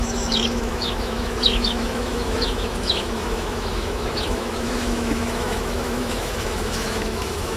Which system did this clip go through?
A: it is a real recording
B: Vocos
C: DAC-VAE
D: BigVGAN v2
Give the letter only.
C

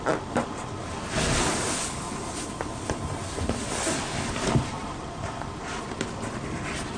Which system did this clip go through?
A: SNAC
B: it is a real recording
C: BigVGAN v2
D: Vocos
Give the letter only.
B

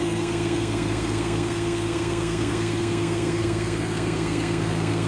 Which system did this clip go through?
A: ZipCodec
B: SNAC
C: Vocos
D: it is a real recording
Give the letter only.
B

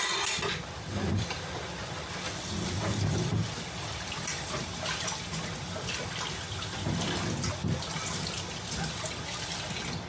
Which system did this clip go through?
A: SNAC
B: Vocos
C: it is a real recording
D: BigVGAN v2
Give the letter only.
C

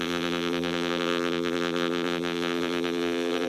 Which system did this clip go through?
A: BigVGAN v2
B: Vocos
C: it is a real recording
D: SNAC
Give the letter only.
A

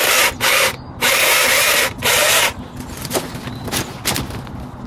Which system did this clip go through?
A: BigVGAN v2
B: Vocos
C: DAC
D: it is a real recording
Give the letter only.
D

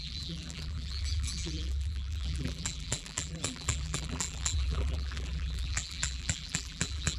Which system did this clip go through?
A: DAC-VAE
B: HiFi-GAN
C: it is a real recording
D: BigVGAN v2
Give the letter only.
D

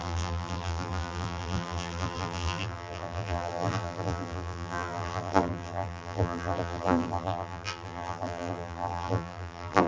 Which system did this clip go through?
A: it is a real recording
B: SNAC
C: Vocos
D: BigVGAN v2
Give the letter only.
D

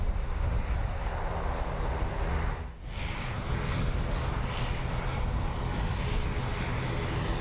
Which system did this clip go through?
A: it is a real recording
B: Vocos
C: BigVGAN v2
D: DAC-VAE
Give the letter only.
A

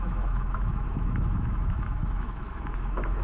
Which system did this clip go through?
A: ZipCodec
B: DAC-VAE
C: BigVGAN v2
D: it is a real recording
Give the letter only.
B